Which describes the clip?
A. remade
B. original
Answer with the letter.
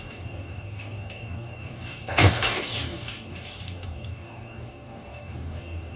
A